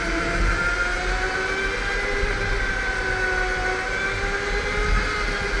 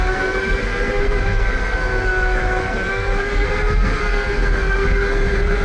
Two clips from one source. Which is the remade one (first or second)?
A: second